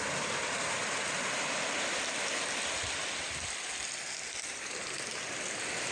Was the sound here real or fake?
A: real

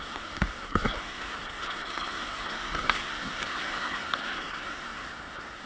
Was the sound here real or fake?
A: fake